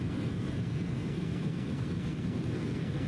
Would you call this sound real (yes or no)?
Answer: no